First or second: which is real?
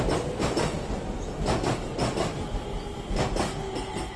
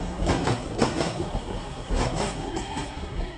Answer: first